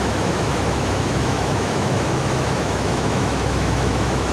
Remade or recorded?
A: remade